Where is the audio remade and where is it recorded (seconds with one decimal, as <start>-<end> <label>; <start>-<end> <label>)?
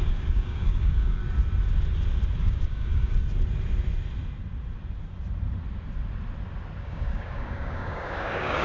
0.0-1.2 remade; 1.2-2.4 recorded; 2.4-3.2 remade; 3.2-6.8 recorded; 6.8-8.6 remade